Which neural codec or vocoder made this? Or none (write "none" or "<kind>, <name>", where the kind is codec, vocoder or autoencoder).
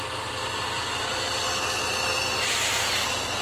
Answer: none